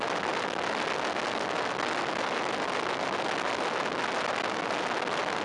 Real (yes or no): yes